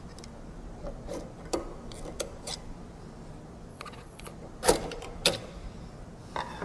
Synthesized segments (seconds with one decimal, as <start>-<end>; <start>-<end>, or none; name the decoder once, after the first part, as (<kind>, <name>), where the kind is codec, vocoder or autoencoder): 3.7-4.3 (vocoder, Vocos)